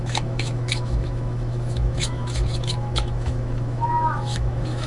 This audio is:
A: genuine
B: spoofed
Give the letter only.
B